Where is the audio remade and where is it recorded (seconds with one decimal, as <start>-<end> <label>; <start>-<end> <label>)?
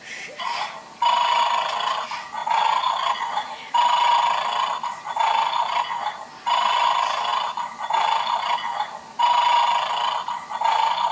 0.0-2.4 recorded; 2.4-3.7 remade; 3.7-11.1 recorded